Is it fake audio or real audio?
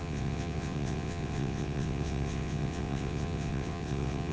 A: fake